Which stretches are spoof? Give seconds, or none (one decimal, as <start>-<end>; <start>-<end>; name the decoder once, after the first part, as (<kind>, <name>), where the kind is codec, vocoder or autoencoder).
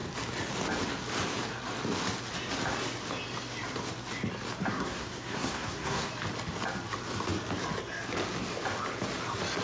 4.7-6.1 (codec, SNAC)